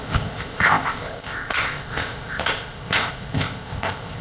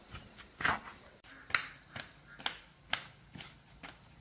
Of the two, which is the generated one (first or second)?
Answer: first